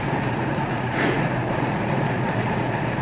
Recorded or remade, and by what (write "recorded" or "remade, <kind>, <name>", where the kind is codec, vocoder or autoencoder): remade, vocoder, Vocos